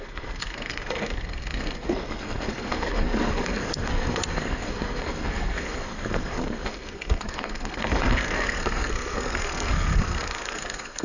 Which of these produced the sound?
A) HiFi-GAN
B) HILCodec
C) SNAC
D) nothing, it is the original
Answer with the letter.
C